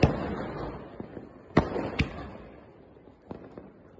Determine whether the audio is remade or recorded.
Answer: recorded